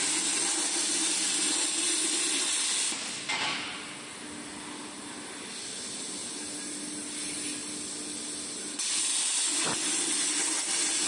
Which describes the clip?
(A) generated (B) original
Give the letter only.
B